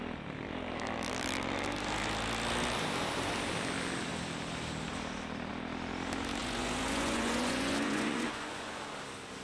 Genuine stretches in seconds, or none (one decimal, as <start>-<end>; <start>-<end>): 0.0-6.4; 8.8-9.4